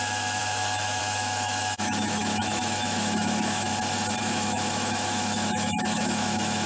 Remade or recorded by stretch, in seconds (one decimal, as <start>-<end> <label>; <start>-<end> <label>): 0.0-3.7 remade; 3.7-4.2 recorded; 4.2-6.7 remade